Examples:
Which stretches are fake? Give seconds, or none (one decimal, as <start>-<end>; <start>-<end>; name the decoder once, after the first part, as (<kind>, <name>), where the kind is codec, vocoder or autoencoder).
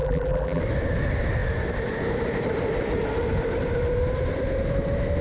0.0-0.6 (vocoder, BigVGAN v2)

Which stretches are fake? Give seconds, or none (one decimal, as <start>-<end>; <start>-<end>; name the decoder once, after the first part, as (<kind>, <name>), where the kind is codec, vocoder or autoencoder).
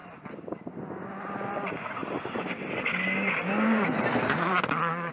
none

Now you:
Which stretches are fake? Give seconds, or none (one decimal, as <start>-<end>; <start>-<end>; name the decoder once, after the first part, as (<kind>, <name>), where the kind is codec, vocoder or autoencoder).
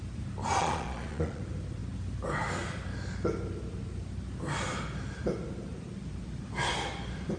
0.6-1.4 (vocoder, Vocos)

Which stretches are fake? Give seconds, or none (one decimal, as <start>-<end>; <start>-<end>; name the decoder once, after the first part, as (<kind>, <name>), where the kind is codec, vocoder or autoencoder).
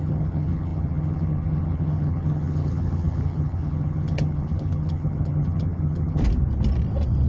0.0-6.2 (vocoder, HiFi-GAN)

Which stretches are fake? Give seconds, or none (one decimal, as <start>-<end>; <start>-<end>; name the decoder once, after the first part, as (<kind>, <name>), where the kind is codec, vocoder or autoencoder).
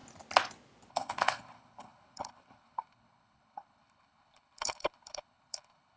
0.9-6.0 (codec, HILCodec)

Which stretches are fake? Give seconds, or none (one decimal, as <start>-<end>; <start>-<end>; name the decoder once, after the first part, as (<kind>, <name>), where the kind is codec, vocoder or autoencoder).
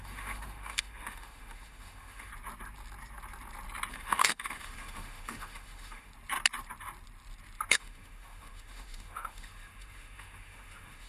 0.0-2.3 (autoencoder, DAC-VAE); 3.9-6.1; 7.7-11.1